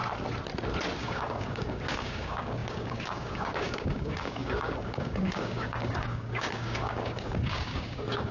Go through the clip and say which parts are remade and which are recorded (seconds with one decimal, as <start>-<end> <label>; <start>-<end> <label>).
0.0-1.0 recorded; 1.0-8.3 remade